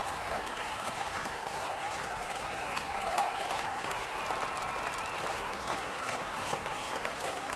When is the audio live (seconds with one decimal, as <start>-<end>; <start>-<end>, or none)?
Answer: 4.2-5.3